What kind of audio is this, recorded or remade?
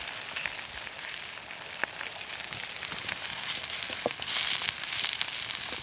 remade